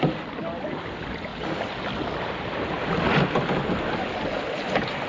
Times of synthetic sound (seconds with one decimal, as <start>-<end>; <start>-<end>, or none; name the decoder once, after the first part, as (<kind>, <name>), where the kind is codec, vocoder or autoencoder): 0.0-1.3 (vocoder, BigVGAN v2); 4.4-5.1